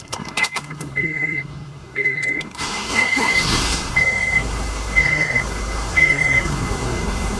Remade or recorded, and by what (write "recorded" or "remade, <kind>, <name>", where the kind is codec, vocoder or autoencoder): remade, codec, SNAC